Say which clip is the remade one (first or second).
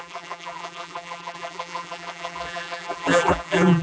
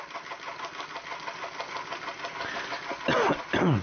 first